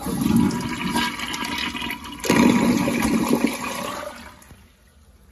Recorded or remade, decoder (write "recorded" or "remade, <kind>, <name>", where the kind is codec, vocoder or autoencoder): recorded